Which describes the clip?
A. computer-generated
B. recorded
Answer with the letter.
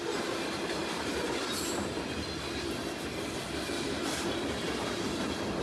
B